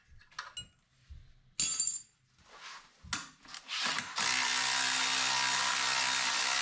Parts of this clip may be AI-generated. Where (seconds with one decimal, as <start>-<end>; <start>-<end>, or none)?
none